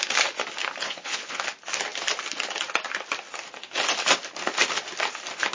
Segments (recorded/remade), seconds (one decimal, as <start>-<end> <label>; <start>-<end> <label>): 0.0-0.8 recorded; 0.8-1.4 remade; 1.4-5.5 recorded